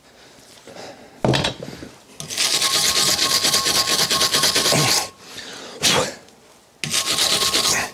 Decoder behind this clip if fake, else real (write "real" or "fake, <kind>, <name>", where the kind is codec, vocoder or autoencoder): real